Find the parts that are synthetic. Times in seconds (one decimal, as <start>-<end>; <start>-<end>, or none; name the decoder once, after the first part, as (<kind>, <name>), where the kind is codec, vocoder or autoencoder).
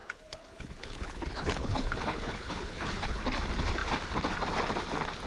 0.0-3.2 (codec, HILCodec)